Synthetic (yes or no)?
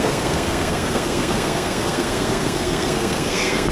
yes